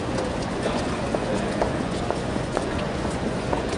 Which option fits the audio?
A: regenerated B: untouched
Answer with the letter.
A